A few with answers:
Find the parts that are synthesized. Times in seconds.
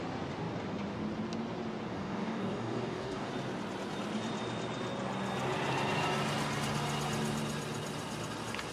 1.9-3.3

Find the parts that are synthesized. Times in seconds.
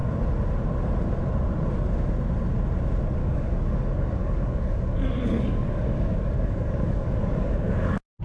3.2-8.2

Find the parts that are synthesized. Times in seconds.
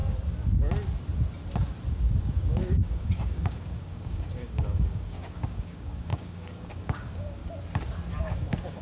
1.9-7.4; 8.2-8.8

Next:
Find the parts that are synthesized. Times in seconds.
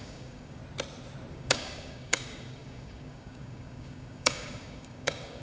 0.0-0.6; 1.3-5.4